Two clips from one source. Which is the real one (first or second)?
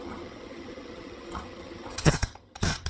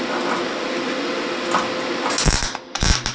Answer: second